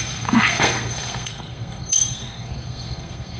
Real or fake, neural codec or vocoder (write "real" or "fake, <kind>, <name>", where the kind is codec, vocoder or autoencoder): fake, codec, SNAC